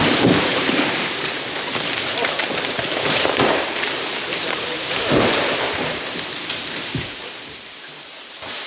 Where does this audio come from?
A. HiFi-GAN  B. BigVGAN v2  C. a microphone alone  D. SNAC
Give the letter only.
B